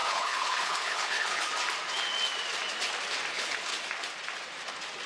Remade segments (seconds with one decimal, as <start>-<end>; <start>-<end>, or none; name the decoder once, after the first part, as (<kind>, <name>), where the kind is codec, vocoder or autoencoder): 0.0-1.5 (codec, HILCodec); 3.3-3.7